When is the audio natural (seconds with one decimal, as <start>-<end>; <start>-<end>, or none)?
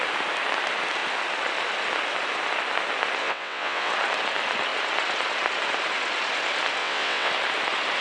0.0-3.2; 3.9-6.8; 7.3-8.0